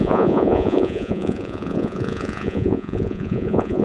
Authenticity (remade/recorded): remade